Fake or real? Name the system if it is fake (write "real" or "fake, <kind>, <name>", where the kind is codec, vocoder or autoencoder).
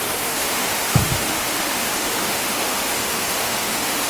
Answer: fake, autoencoder, DAC-VAE